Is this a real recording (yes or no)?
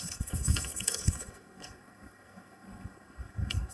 no